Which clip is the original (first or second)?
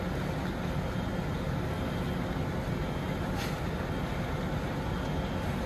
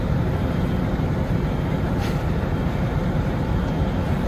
first